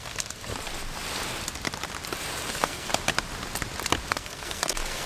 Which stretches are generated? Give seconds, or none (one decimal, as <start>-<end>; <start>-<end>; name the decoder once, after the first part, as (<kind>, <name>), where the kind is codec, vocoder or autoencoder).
0.0-0.5 (codec, SNAC); 2.5-2.9; 4.1-5.1